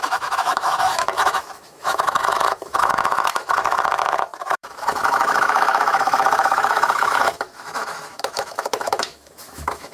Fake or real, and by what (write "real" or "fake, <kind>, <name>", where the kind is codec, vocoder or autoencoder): fake, autoencoder, DAC-VAE